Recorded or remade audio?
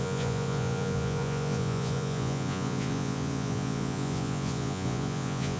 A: remade